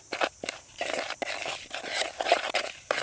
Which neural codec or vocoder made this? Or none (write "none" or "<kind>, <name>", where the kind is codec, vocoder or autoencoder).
vocoder, BigVGAN v2